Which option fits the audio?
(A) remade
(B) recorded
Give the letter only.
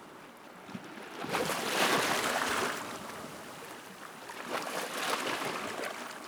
B